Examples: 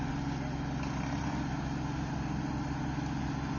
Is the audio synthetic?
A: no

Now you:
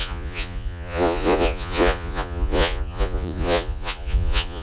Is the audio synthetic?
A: yes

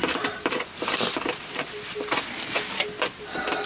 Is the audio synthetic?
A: no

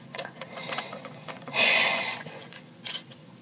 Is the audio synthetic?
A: yes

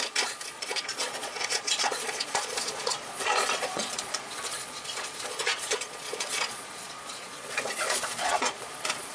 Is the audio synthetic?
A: yes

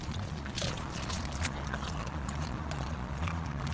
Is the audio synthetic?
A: yes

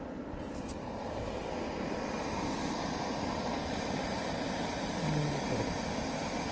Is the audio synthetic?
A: no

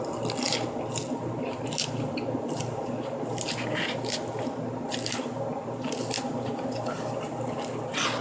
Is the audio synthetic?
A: no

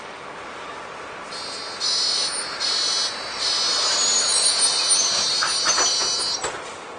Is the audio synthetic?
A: no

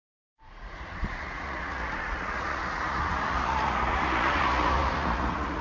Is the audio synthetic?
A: yes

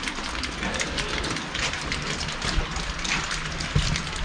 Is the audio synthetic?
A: no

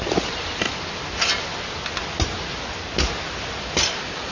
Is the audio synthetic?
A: no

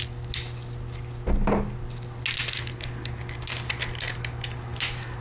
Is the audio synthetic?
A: no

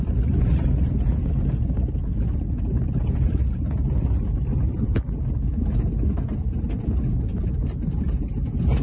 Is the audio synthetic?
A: no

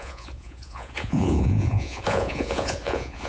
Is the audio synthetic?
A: yes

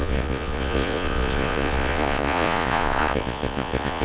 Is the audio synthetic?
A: yes